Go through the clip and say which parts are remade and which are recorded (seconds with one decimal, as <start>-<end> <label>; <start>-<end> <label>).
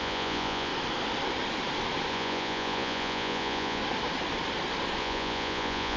0.0-0.7 remade; 0.7-2.1 recorded; 2.1-3.8 remade; 3.8-5.0 recorded; 5.0-6.0 remade